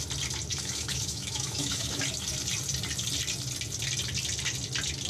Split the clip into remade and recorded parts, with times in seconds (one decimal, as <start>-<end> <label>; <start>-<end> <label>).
0.0-0.5 recorded; 0.5-2.0 remade; 2.0-5.1 recorded